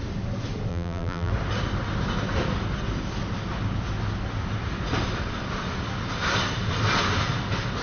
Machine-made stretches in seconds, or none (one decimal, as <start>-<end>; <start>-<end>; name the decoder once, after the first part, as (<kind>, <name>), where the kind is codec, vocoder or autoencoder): 0.7-1.3 (vocoder, BigVGAN v2)